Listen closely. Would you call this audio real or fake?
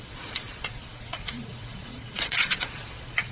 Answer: fake